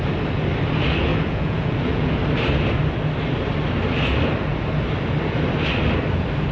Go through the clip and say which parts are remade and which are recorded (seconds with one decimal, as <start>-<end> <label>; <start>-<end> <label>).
0.0-1.1 recorded; 1.1-2.2 remade; 2.2-6.5 recorded